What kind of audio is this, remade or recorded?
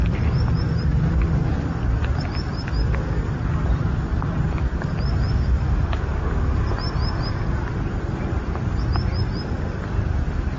recorded